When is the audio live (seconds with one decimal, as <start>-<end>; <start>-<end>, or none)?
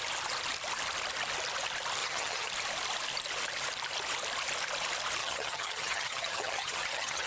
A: 0.0-2.0; 2.5-5.2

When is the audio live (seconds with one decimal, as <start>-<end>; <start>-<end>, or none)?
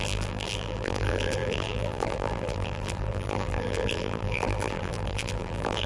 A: none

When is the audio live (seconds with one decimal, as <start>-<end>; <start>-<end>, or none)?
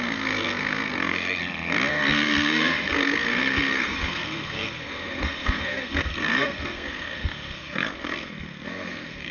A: 1.4-1.9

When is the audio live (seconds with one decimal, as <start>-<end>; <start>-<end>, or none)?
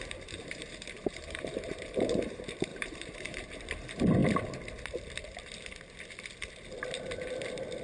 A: 4.2-7.8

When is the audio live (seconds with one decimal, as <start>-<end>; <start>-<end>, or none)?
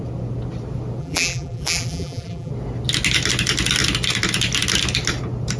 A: 0.0-1.0; 2.5-5.6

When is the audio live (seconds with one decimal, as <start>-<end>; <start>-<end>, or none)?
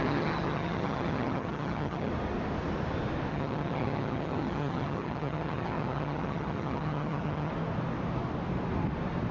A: 2.1-3.3; 7.5-9.3